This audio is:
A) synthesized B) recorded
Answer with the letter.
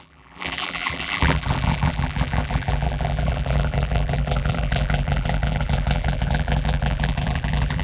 A